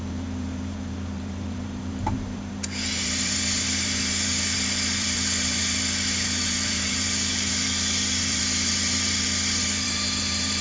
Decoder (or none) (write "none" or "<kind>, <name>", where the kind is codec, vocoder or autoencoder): vocoder, BigVGAN v2